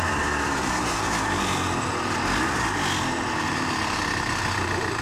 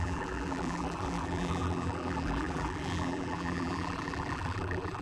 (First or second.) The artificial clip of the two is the second